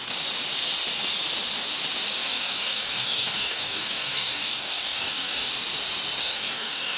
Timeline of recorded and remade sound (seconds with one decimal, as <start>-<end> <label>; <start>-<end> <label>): 0.0-2.2 recorded; 2.2-5.5 remade; 5.5-6.2 recorded; 6.2-7.0 remade